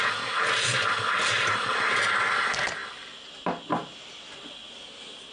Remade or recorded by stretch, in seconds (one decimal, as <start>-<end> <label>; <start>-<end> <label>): 0.0-5.3 recorded